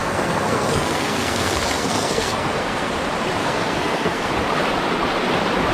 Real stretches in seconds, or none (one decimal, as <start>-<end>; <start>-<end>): 2.9-3.4; 4.3-5.7